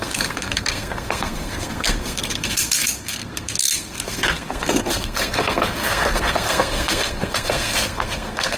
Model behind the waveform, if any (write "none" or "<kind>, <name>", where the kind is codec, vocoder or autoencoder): codec, SNAC